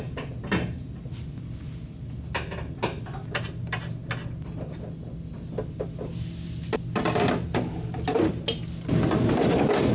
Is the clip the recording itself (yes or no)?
yes